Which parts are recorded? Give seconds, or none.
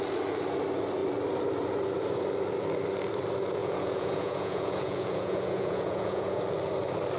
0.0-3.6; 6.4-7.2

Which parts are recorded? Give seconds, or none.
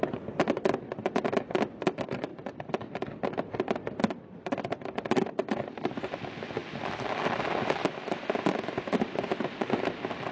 0.0-10.3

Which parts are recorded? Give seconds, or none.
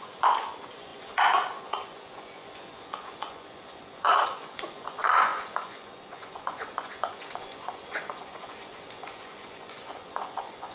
none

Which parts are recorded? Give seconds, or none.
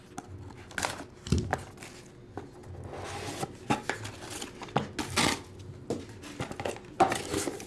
0.0-7.7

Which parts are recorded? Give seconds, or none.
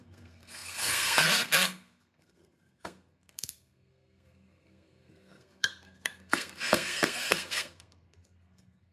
none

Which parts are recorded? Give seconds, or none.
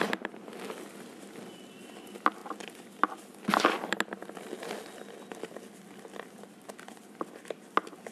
0.0-8.1